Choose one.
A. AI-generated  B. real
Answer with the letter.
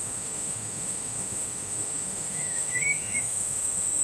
A